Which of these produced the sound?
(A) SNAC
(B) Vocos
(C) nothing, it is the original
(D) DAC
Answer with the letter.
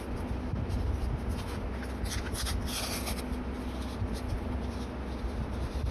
C